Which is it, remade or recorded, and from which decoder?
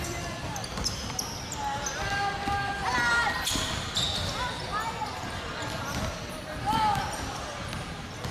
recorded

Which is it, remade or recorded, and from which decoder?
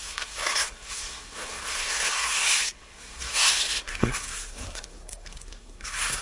remade, codec, SNAC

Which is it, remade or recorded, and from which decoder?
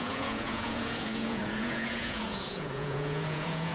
remade, vocoder, Vocos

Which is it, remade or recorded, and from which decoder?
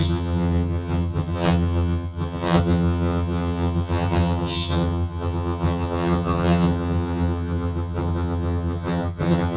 remade, vocoder, HiFi-GAN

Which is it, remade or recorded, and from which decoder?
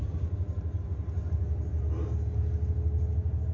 recorded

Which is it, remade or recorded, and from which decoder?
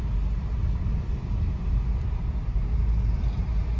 recorded